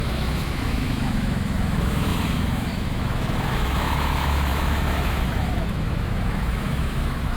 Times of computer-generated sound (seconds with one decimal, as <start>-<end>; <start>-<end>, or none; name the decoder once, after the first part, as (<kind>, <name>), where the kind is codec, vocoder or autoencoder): 0.0-7.4 (autoencoder, DAC-VAE)